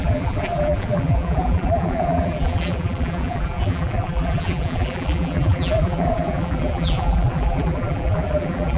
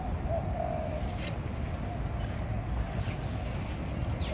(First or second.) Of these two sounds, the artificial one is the first